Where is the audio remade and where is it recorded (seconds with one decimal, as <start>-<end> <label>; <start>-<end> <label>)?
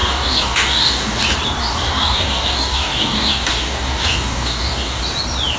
0.0-1.2 remade; 1.2-1.6 recorded; 1.6-5.0 remade; 5.0-5.6 recorded